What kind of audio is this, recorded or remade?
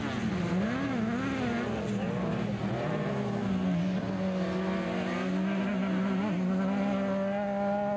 recorded